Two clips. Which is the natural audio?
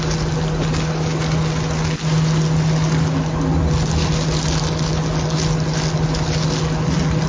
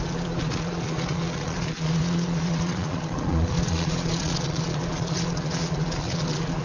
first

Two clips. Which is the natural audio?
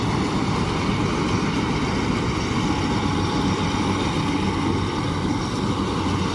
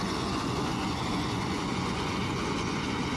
first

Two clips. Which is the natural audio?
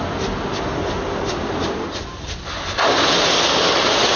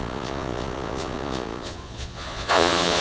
first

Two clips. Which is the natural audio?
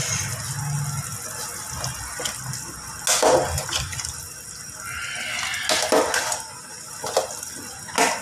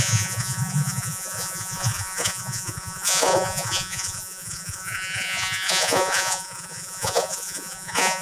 first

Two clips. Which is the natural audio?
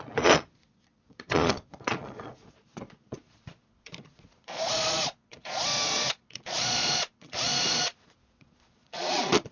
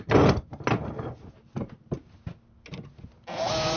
second